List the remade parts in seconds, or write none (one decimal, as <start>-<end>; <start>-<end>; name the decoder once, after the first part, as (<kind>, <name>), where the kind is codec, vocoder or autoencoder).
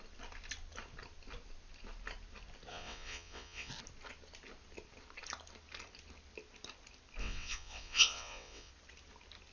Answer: 2.7-3.7 (vocoder, WaveNeXt); 7.2-8.7